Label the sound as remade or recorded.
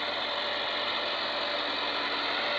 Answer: recorded